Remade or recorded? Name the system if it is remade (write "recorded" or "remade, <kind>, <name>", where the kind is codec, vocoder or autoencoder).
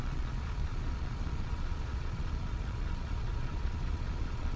remade, vocoder, Vocos